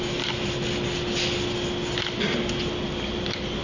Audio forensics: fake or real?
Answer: real